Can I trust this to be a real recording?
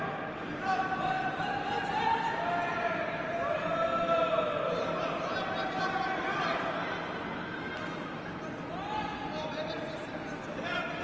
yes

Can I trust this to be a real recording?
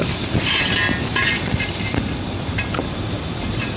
yes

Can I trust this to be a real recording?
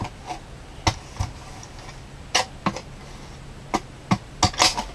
yes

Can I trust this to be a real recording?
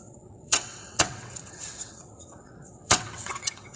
no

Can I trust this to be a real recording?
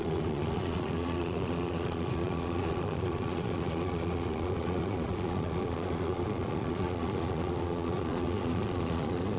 no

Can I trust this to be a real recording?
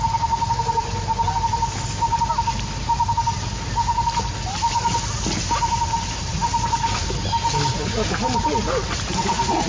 yes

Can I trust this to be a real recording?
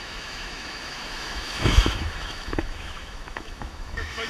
no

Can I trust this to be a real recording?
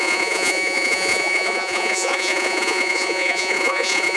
no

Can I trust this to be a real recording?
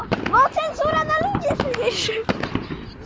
yes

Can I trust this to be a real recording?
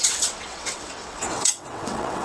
no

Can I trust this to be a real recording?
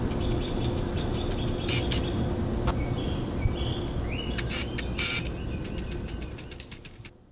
yes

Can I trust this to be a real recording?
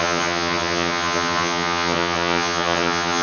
no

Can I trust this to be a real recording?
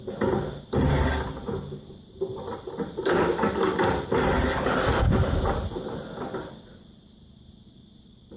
yes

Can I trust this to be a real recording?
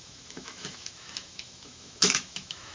no